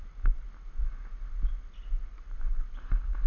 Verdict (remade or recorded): recorded